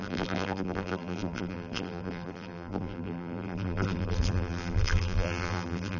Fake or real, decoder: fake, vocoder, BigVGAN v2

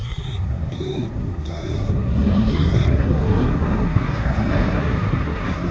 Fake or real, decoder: fake, codec, SNAC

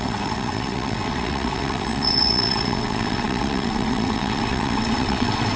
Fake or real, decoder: fake, vocoder, WaveNeXt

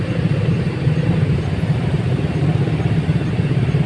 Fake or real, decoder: fake, vocoder, BigVGAN v2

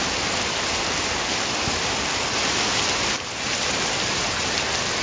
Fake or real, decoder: real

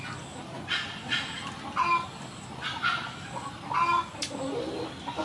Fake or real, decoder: real